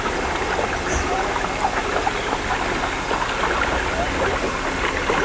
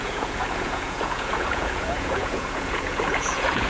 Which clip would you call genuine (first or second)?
first